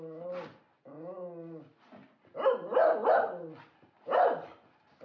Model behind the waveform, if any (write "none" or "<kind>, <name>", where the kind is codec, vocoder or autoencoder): none